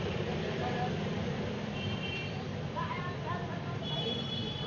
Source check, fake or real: fake